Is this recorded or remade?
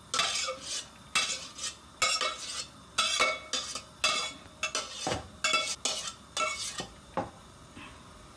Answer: recorded